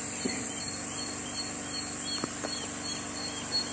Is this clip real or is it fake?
real